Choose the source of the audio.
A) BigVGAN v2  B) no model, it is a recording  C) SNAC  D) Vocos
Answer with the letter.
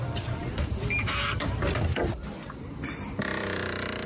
A